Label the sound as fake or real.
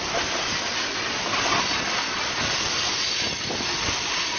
real